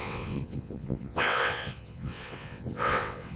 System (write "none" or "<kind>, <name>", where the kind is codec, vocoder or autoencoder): vocoder, WaveNeXt